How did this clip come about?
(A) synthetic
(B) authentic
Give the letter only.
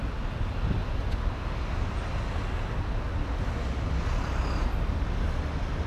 B